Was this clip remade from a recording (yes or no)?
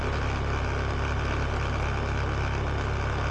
no